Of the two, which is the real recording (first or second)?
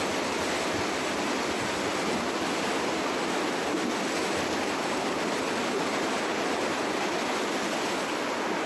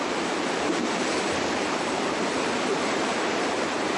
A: first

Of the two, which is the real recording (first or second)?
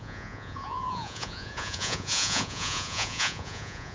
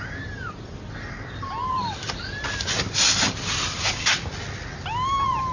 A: second